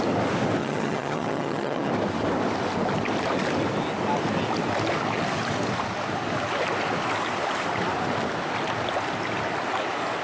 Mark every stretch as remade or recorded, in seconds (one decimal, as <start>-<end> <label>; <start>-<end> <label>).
0.0-0.6 recorded; 0.6-1.9 remade; 1.9-10.2 recorded